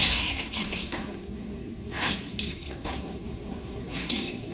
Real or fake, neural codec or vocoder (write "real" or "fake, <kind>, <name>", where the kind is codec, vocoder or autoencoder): fake, codec, SNAC